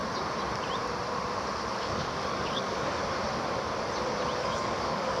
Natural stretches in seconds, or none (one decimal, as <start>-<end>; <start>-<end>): 0.0-1.7; 3.0-4.4